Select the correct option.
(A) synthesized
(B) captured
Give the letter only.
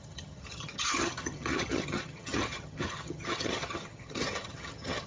A